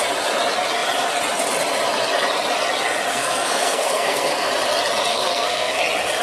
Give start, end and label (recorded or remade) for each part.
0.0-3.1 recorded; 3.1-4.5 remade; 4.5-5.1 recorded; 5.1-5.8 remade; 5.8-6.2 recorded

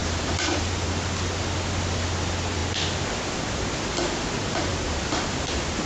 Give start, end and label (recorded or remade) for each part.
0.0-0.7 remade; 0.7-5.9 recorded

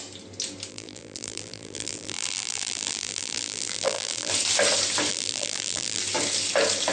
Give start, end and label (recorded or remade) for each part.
0.0-0.7 recorded; 0.7-4.3 remade; 4.3-5.1 recorded; 5.1-6.0 remade; 6.0-6.9 recorded

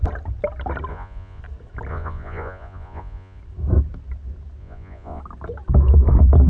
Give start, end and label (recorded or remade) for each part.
0.0-0.9 recorded; 0.9-1.4 remade; 1.4-1.9 recorded; 1.9-3.4 remade; 3.4-4.6 recorded; 4.6-5.2 remade; 5.2-6.5 recorded

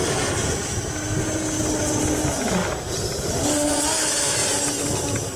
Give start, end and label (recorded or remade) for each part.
0.0-2.6 recorded; 2.6-3.3 remade; 3.3-5.4 recorded

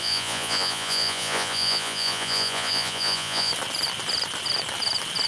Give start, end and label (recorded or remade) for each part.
0.0-3.5 remade; 3.5-5.3 recorded

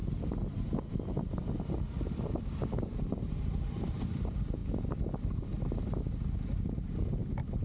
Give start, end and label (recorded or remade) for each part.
0.0-0.9 recorded; 0.9-4.6 remade; 4.6-7.0 recorded; 7.0-7.6 remade

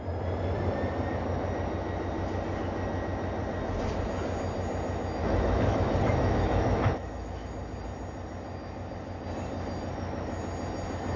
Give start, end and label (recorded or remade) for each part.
0.0-5.2 recorded; 5.2-7.5 remade; 7.5-11.2 recorded